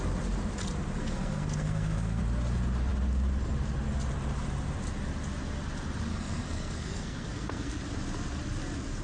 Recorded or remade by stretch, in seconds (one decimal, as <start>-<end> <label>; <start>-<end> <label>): 0.0-1.0 recorded; 1.0-2.2 remade; 2.2-6.1 recorded; 6.1-7.8 remade; 7.8-9.0 recorded